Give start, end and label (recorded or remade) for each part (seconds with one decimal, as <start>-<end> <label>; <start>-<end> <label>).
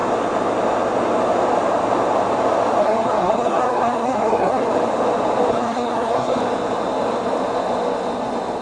0.0-2.8 recorded; 2.8-4.7 remade; 4.7-5.5 recorded; 5.5-6.4 remade; 6.4-8.6 recorded